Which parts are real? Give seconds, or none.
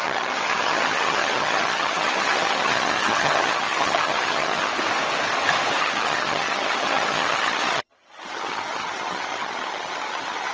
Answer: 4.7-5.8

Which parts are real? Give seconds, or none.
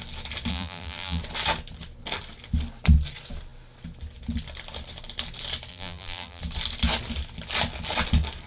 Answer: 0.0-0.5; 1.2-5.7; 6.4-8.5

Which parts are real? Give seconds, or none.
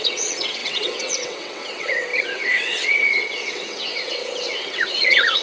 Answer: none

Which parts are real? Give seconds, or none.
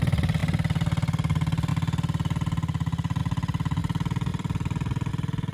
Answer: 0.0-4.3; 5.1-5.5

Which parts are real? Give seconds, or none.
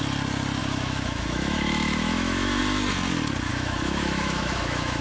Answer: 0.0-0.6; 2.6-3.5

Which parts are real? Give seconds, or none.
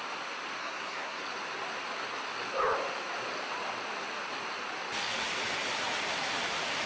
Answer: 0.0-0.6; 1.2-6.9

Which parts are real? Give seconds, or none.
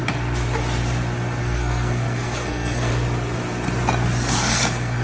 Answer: 0.0-1.4; 2.9-4.3